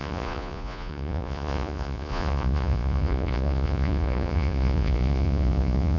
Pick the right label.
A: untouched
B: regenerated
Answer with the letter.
B